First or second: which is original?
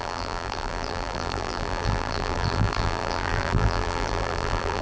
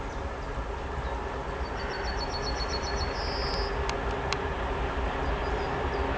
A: second